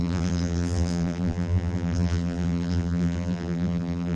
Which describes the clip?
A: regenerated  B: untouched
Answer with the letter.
A